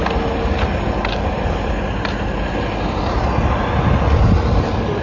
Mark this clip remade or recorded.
recorded